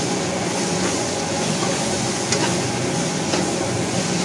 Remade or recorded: remade